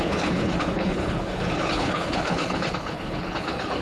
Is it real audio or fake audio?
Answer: fake